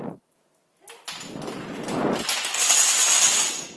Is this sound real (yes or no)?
yes